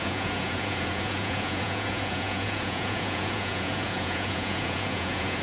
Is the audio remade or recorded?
remade